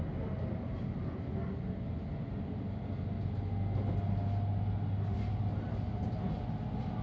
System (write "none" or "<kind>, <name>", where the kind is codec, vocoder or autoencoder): none